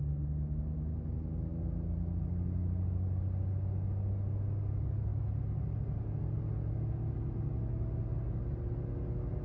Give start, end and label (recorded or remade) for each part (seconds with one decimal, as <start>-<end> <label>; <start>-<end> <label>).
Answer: 0.0-9.4 recorded